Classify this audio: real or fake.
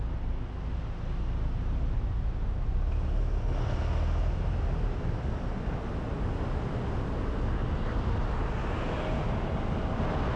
real